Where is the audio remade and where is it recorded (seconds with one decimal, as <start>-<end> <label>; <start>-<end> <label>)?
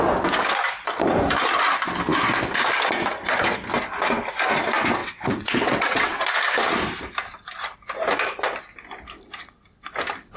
0.0-5.0 recorded; 5.0-6.2 remade; 6.2-10.4 recorded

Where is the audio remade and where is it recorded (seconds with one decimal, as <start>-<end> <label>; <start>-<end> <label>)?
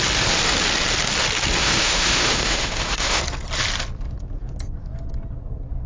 0.0-1.6 recorded; 1.6-3.2 remade; 3.2-5.9 recorded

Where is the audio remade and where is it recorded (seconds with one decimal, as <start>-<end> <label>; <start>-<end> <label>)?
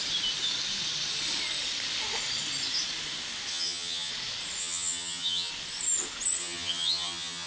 0.0-3.5 recorded; 3.5-4.1 remade; 4.1-4.6 recorded; 4.6-5.5 remade; 5.5-6.4 recorded; 6.4-7.5 remade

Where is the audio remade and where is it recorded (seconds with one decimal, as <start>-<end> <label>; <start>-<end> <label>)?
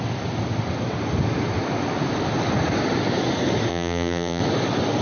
0.0-3.7 recorded; 3.7-4.4 remade; 4.4-5.0 recorded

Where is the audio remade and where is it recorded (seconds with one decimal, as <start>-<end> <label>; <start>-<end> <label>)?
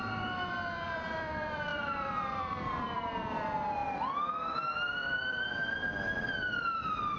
0.0-7.2 remade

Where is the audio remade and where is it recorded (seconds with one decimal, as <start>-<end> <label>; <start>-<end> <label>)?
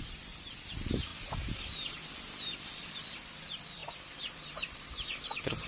0.0-1.1 recorded; 1.1-2.0 remade; 2.0-5.7 recorded